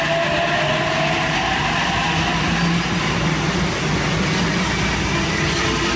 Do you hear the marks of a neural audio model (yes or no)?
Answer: no